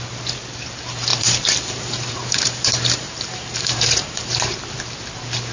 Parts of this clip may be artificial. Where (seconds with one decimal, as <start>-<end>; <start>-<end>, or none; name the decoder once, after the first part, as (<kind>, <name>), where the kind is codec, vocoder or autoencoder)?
1.1-4.4 (vocoder, BigVGAN v2)